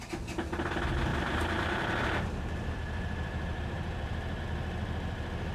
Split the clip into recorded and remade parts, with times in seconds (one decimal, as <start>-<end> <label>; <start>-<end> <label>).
0.0-1.1 recorded; 1.1-4.4 remade; 4.4-5.5 recorded